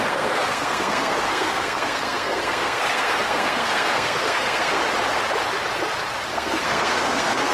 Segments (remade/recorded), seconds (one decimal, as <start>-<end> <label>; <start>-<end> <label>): 0.0-4.8 remade; 4.8-6.3 recorded; 6.3-7.5 remade